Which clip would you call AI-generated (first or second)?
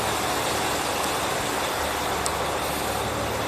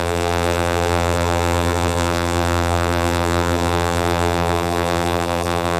second